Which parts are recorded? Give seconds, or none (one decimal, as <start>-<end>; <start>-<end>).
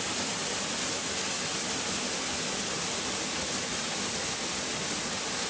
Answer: 0.0-5.5